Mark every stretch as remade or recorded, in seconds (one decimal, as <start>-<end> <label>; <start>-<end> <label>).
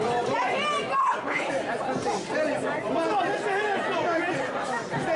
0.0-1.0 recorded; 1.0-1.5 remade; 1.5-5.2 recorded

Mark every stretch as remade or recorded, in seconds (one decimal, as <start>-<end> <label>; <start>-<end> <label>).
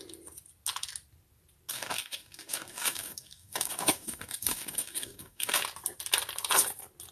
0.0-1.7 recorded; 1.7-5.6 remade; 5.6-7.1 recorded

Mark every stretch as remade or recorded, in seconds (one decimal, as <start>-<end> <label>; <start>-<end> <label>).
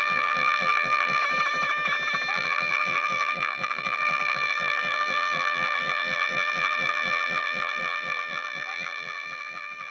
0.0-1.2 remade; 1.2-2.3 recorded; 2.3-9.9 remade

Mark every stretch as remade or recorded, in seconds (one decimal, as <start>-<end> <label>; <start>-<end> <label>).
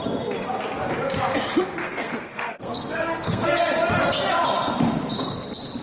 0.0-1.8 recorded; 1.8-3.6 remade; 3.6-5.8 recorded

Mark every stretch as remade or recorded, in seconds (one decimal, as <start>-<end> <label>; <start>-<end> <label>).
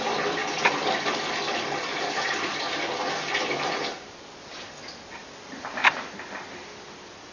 0.0-7.3 recorded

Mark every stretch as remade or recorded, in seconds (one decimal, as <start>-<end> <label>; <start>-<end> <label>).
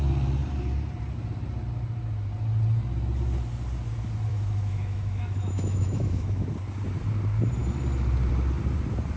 0.0-4.3 recorded; 4.3-6.5 remade; 6.5-9.2 recorded